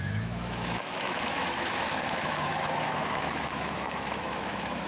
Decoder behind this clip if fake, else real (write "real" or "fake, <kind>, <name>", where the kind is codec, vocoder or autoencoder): fake, autoencoder, DAC-VAE